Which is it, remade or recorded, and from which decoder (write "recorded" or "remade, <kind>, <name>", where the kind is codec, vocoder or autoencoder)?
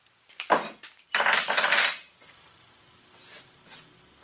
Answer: recorded